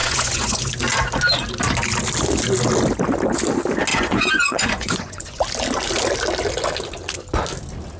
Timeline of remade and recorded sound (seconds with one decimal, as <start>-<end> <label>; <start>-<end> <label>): 0.0-0.7 remade; 0.7-3.9 recorded; 3.9-5.4 remade; 5.4-8.0 recorded